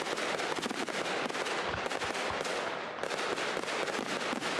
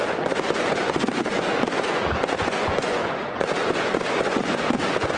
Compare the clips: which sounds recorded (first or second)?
first